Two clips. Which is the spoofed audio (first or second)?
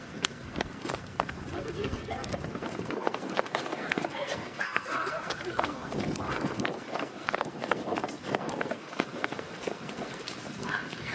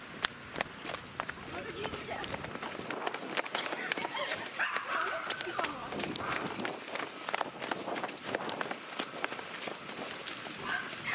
first